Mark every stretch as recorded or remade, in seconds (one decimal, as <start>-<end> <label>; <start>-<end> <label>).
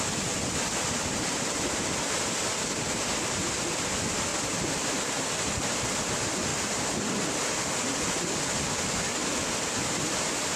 0.0-2.7 recorded; 2.7-3.2 remade; 3.2-4.3 recorded; 4.3-5.1 remade; 5.1-10.6 recorded